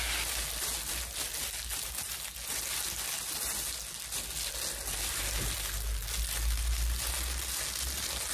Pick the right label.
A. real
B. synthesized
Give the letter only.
A